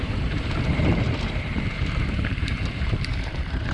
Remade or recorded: remade